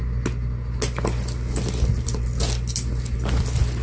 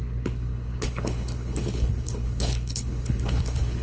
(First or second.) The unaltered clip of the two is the first